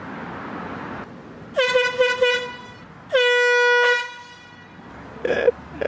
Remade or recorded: recorded